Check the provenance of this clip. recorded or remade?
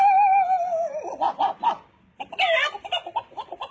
recorded